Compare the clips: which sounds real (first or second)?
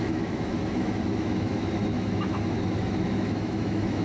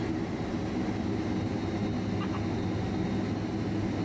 second